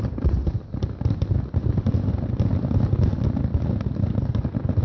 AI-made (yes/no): no